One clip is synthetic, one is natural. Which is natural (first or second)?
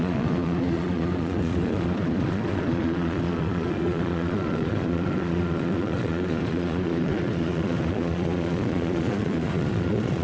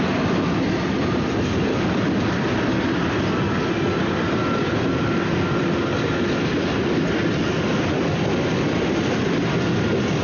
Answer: second